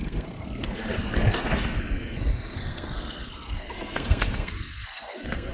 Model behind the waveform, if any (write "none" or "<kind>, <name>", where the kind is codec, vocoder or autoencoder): codec, SNAC